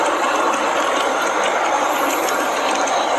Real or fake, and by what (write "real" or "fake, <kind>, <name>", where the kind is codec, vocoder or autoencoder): real